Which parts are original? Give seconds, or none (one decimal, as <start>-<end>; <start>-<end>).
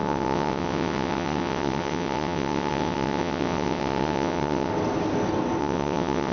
4.7-5.6